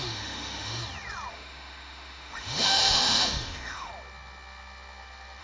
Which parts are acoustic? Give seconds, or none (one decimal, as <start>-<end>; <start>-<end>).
0.8-1.3; 3.9-5.4